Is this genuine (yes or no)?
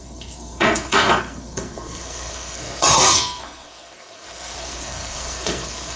no